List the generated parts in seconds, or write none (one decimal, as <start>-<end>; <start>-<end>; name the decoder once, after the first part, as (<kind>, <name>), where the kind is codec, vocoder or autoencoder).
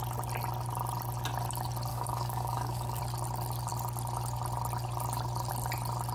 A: 1.9-3.0 (codec, DAC)